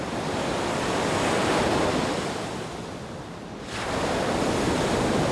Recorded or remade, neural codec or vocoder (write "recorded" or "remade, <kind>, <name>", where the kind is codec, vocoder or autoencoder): recorded